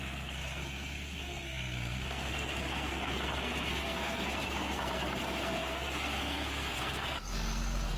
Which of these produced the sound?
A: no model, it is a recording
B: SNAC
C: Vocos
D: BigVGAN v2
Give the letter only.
B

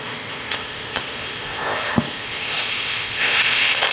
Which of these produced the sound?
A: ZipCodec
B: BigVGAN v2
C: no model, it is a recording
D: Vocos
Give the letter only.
A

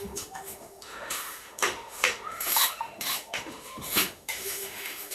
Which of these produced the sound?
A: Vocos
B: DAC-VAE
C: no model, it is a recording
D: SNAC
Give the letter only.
B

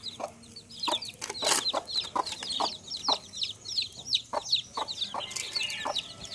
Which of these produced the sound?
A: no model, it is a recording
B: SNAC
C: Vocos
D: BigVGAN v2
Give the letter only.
A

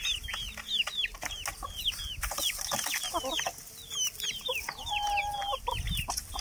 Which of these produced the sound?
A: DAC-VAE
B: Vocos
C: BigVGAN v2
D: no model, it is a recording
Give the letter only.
D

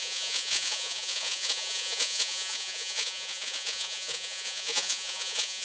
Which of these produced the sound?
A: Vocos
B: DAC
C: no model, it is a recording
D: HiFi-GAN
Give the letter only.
A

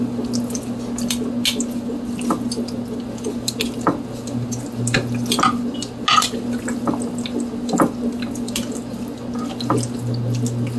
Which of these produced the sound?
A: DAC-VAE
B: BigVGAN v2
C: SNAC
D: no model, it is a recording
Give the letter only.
D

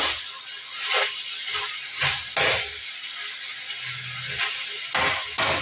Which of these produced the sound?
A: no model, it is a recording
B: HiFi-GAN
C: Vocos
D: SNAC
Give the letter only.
A